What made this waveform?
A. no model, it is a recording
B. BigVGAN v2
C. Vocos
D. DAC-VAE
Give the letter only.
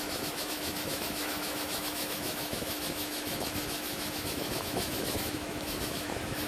D